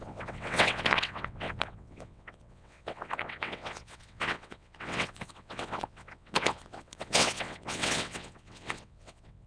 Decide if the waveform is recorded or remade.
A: remade